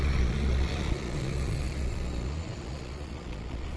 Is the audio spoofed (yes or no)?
yes